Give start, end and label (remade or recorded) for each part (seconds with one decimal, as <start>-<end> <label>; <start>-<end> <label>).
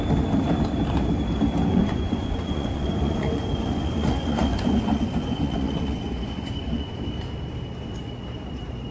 0.0-1.7 recorded; 1.7-7.0 remade; 7.0-8.9 recorded